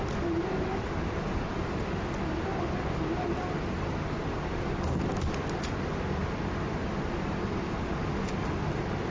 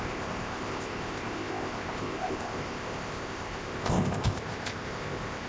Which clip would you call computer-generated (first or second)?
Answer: second